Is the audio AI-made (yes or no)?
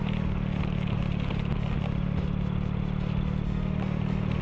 no